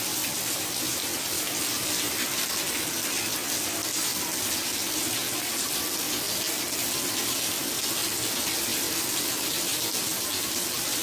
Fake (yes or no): no